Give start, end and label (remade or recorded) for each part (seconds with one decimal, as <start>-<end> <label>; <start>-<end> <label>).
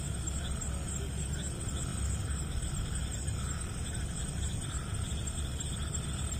0.0-6.4 recorded